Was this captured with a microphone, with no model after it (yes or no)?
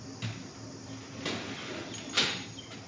yes